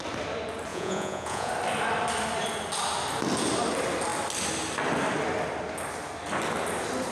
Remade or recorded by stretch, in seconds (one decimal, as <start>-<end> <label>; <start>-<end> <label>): 0.0-0.7 recorded; 0.7-1.5 remade; 1.5-7.1 recorded

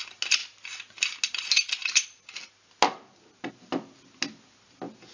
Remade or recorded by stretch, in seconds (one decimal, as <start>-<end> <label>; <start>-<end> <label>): 0.0-5.1 recorded